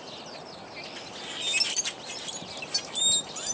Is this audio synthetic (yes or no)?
no